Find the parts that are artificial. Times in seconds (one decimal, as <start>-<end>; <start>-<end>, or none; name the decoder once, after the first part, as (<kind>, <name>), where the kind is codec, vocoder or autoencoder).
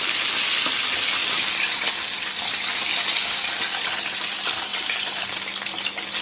4.7-5.4 (vocoder, BigVGAN v2)